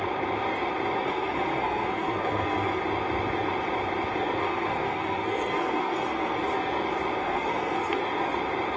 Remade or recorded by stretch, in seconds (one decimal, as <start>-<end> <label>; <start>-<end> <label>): 0.0-1.0 recorded; 1.0-2.8 remade; 2.8-4.4 recorded; 4.4-6.4 remade; 6.4-7.2 recorded; 7.2-8.0 remade; 8.0-8.8 recorded